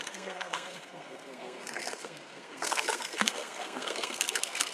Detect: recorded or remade remade